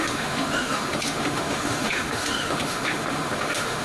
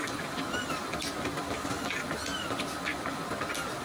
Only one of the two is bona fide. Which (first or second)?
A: second